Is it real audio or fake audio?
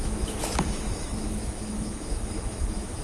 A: fake